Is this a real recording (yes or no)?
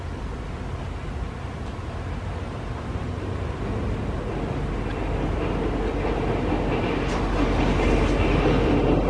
yes